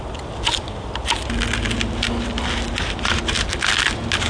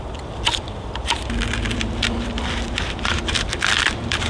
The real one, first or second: first